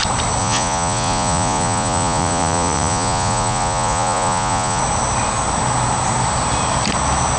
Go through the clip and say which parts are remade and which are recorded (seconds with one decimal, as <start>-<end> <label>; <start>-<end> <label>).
0.0-0.4 recorded; 0.4-4.8 remade; 4.8-7.4 recorded